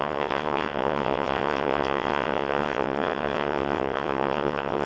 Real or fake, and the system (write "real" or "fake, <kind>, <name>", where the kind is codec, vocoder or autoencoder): fake, vocoder, WaveNeXt